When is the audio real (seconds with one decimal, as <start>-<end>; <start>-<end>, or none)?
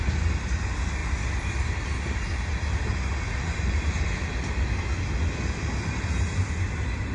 0.0-7.1